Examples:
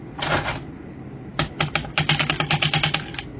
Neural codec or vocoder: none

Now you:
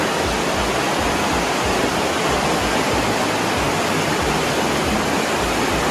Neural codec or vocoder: none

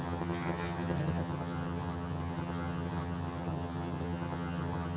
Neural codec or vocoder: vocoder, HiFi-GAN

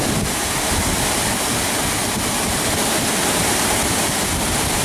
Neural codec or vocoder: vocoder, BigVGAN v2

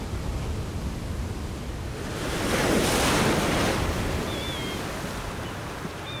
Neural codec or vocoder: none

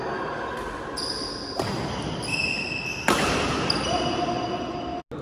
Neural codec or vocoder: none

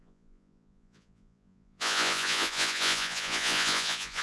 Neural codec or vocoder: vocoder, Vocos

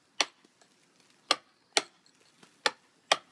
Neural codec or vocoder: none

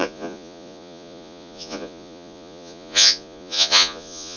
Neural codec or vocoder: vocoder, Vocos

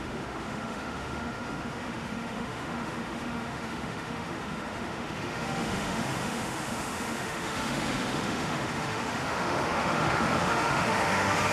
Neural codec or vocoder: autoencoder, DAC-VAE